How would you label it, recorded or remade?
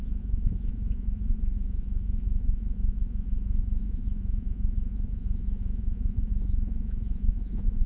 remade